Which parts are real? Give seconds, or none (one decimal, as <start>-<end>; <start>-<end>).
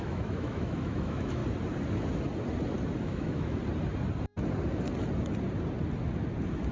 1.4-3.0; 3.6-6.7